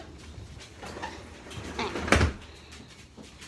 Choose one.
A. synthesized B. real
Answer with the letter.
B